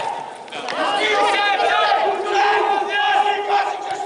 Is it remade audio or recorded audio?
recorded